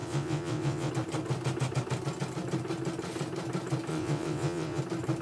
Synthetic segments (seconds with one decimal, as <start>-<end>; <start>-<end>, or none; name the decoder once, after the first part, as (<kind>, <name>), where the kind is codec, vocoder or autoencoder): 0.0-0.9 (vocoder, WaveNeXt); 3.9-4.8